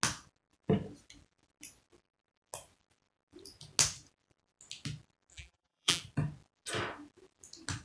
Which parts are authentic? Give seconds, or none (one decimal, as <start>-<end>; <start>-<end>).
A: 0.0-5.3; 6.0-7.8